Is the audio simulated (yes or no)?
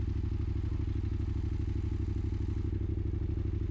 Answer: no